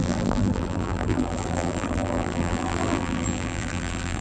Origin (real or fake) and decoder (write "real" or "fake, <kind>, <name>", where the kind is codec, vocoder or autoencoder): fake, vocoder, BigVGAN v2